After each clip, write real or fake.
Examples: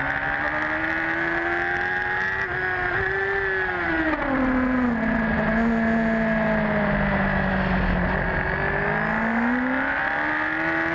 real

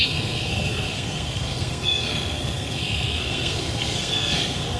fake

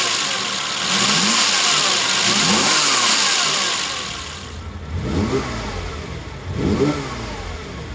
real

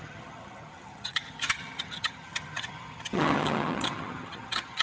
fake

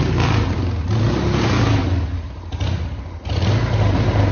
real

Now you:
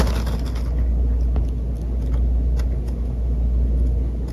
real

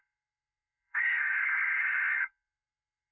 fake